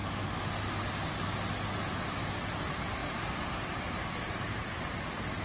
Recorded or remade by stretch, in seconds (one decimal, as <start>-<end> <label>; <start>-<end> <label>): 0.0-0.5 remade; 0.5-3.0 recorded; 3.0-4.9 remade; 4.9-5.4 recorded